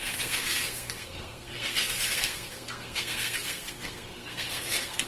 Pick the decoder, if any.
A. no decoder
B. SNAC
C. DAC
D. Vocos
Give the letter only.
B